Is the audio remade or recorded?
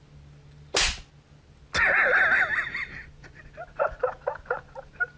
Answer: recorded